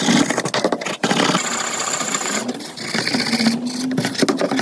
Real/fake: real